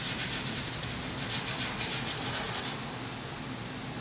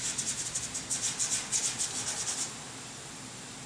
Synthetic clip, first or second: second